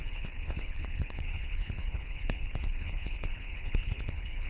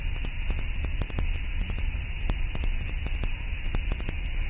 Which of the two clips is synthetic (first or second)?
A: first